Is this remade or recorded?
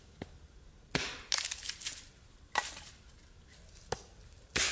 recorded